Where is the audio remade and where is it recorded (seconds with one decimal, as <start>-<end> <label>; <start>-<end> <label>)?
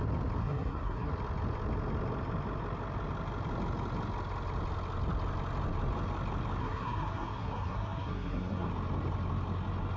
0.0-0.4 recorded; 0.4-1.1 remade; 1.1-6.6 recorded; 6.6-8.7 remade; 8.7-10.0 recorded